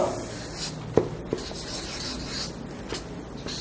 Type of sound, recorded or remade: recorded